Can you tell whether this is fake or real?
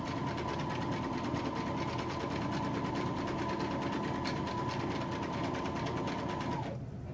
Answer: real